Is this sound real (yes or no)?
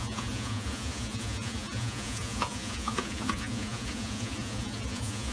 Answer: no